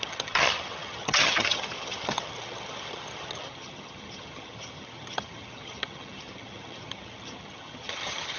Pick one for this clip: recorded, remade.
remade